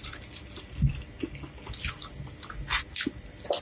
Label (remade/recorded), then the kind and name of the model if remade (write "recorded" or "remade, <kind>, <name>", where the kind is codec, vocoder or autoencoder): recorded